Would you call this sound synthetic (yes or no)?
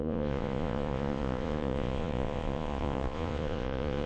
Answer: yes